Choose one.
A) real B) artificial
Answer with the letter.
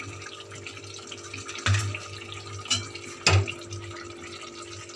A